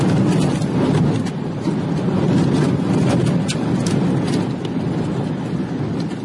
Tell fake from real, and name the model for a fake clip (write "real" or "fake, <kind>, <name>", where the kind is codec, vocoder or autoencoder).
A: real